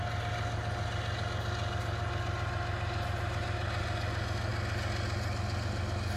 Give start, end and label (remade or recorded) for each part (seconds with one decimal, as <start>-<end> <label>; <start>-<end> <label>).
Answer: 0.0-6.2 recorded

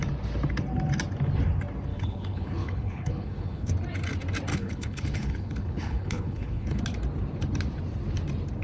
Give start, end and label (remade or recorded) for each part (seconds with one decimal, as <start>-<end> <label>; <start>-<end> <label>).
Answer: 0.0-1.9 recorded; 1.9-3.7 remade; 3.7-4.5 recorded; 4.5-6.8 remade; 6.8-8.6 recorded

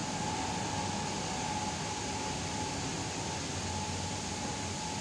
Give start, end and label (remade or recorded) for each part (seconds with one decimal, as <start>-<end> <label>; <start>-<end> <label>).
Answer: 0.0-5.0 recorded

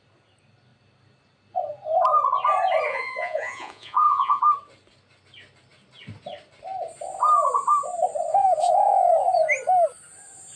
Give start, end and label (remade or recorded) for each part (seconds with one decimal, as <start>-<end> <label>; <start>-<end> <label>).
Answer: 0.0-2.9 recorded; 2.9-4.4 remade; 4.4-8.3 recorded; 8.3-9.1 remade; 9.1-10.6 recorded

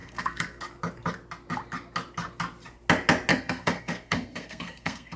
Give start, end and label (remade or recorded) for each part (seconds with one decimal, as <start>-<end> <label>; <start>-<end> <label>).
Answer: 0.0-0.6 remade; 0.6-3.3 recorded; 3.3-5.2 remade

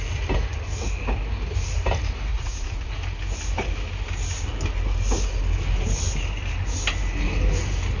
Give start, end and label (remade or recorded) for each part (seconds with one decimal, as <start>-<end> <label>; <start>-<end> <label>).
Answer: 0.0-2.3 recorded; 2.3-2.9 remade; 2.9-8.0 recorded

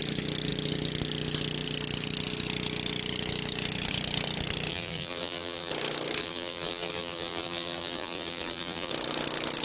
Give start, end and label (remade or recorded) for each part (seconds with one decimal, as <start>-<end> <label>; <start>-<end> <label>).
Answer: 0.0-4.7 recorded; 4.7-5.7 remade; 5.7-6.2 recorded; 6.2-8.9 remade; 8.9-9.6 recorded

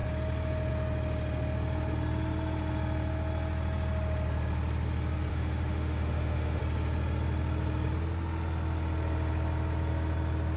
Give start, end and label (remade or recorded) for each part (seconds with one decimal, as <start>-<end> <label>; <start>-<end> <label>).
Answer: 0.0-5.3 recorded; 5.3-6.6 remade; 6.6-10.6 recorded